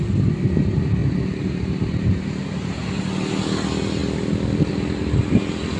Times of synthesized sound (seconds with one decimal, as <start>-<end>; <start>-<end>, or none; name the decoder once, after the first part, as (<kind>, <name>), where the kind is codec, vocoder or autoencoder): 1.0-3.0 (vocoder, BigVGAN v2)